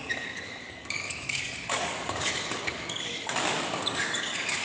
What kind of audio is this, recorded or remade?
remade